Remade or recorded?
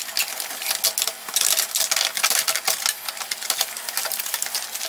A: recorded